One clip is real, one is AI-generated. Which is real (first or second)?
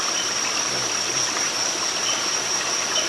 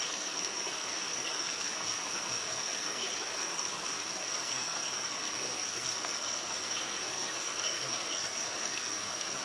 first